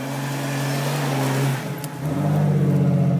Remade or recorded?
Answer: recorded